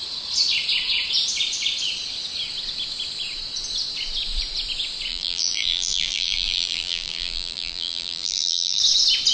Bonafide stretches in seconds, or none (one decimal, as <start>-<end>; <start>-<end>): 0.0-5.1; 8.8-9.3